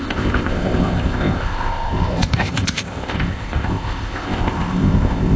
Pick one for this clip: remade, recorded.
remade